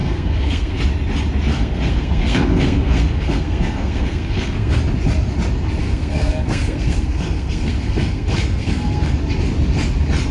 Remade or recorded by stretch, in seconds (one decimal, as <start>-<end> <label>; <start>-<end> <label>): 0.0-0.8 remade; 0.8-1.5 recorded; 1.5-4.8 remade; 4.8-5.8 recorded; 5.8-9.2 remade; 9.2-10.3 recorded